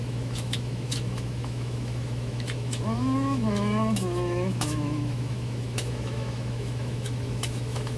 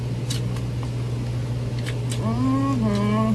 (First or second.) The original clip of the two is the second